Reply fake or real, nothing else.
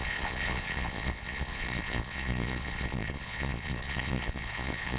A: fake